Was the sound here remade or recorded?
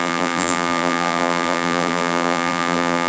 remade